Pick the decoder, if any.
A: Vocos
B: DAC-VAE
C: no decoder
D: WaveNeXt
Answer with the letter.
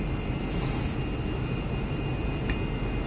C